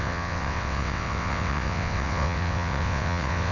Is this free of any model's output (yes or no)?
no